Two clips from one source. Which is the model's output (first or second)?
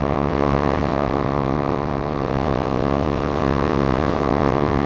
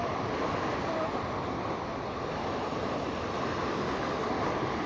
first